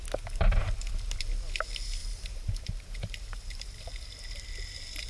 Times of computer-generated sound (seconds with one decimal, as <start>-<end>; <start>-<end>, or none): 2.0-3.8